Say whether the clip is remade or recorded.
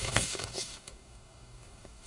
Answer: remade